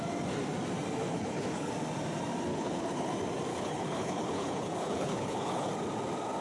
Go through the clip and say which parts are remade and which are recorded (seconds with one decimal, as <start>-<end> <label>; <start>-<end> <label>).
0.0-1.1 recorded; 1.1-1.7 remade; 1.7-2.5 recorded; 2.5-3.1 remade; 3.1-3.5 recorded; 3.5-5.7 remade; 5.7-6.4 recorded